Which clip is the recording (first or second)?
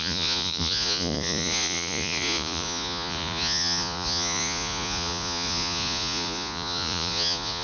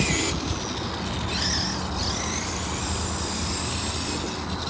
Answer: second